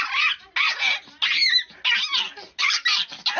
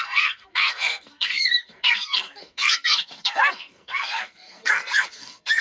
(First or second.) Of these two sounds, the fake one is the second